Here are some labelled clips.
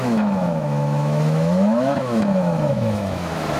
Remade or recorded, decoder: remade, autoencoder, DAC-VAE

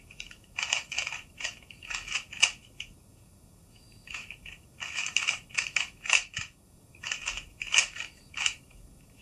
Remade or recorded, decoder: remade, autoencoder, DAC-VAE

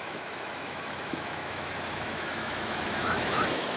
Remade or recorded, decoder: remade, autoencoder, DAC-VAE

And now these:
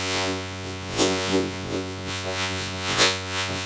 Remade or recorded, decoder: remade, vocoder, Vocos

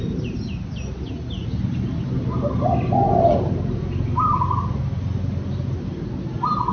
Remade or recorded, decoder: recorded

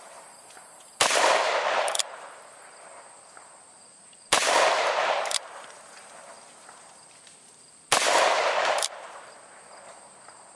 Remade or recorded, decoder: remade, vocoder, BigVGAN v2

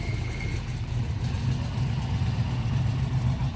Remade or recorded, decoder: recorded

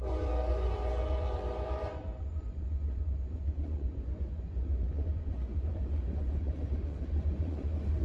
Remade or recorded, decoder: remade, vocoder, Vocos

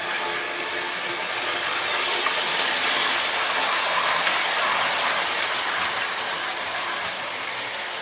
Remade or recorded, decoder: recorded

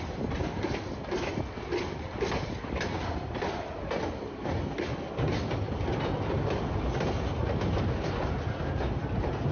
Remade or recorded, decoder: recorded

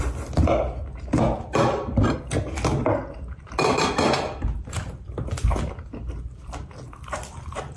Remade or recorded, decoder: recorded